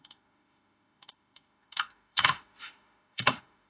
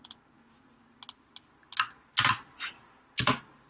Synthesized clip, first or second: first